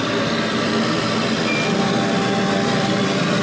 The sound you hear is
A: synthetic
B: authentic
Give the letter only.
A